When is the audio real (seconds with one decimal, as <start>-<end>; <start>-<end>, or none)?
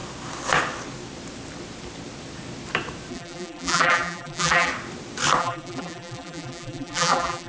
0.0-3.1; 4.7-5.4